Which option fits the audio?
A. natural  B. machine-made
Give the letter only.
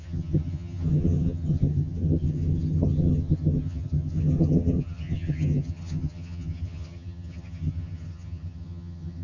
B